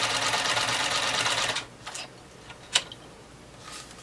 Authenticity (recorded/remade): recorded